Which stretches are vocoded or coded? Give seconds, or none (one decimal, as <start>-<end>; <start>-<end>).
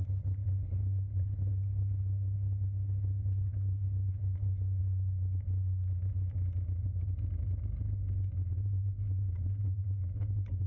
0.4-4.8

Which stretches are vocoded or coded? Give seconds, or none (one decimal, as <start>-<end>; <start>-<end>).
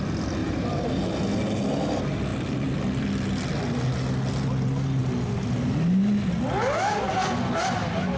0.4-1.0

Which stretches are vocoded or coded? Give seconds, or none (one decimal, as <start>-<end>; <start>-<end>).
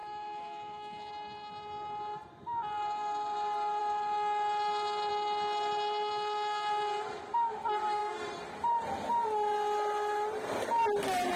0.0-1.1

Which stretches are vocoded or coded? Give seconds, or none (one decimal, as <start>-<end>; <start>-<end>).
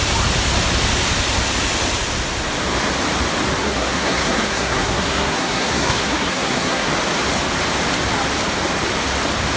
3.6-6.9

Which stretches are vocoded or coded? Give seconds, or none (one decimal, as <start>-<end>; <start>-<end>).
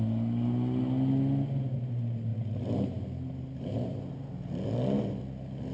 none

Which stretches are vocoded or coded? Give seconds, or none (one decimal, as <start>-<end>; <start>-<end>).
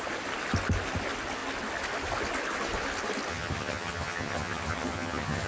3.3-5.5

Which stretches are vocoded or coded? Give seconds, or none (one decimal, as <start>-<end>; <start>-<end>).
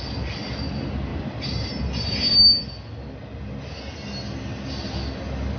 none